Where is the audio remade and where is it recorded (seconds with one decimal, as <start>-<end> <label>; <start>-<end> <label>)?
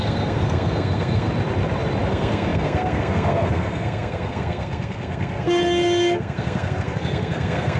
0.0-1.3 remade; 1.3-2.1 recorded; 2.1-7.8 remade